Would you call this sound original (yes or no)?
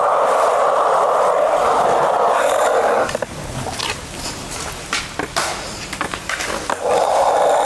yes